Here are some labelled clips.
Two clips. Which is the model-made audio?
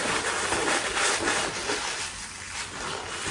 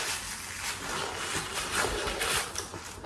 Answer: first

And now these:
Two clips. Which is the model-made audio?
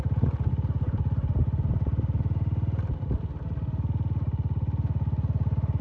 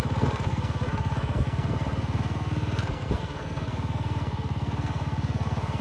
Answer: second